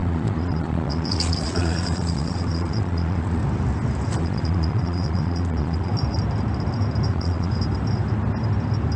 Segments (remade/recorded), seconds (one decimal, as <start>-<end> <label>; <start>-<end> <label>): 0.0-3.4 remade; 3.4-4.2 recorded; 4.2-5.9 remade; 5.9-7.1 recorded; 7.1-7.5 remade; 7.5-9.0 recorded

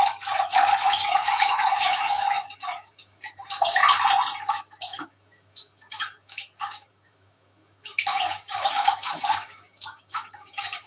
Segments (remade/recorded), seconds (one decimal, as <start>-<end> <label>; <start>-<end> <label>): 0.0-3.8 remade; 3.8-4.4 recorded; 4.4-10.9 remade

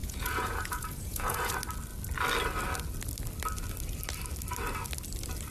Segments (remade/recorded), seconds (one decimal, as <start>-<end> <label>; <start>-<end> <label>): 0.0-1.5 remade; 1.5-5.5 recorded